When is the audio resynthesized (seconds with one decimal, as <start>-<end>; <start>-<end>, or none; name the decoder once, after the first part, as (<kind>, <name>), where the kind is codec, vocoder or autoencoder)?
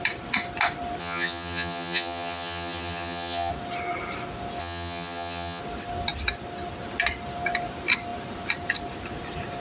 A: 1.0-3.5 (vocoder, HiFi-GAN); 4.6-5.6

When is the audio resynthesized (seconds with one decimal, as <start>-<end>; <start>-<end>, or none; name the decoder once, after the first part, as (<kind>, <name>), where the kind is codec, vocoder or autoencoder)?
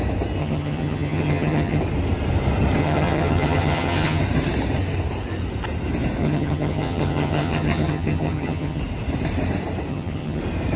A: 0.4-1.8 (vocoder, HiFi-GAN); 2.8-4.2; 6.2-8.8; 9.9-10.4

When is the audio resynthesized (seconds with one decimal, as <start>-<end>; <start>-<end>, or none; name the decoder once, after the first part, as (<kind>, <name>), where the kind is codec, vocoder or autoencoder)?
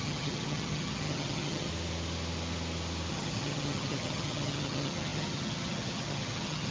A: 0.0-1.7 (vocoder, HiFi-GAN); 3.1-6.7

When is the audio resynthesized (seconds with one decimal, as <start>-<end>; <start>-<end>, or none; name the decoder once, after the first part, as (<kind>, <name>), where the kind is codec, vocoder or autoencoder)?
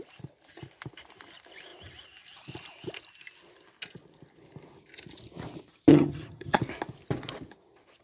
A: 5.9-6.6 (vocoder, HiFi-GAN)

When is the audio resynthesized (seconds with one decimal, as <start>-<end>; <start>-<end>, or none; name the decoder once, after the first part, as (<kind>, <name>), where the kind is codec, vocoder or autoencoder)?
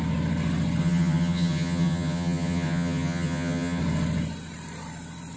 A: 0.8-3.8 (vocoder, HiFi-GAN)